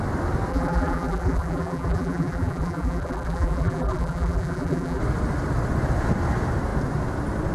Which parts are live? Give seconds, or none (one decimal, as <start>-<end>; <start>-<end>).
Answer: 0.0-0.5; 5.0-7.5

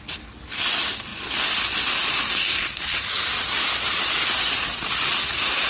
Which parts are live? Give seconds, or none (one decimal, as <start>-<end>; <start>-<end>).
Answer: 0.0-3.2; 5.3-5.7

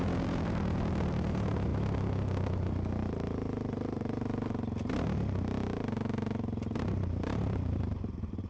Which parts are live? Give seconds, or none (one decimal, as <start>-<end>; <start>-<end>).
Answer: 1.7-6.8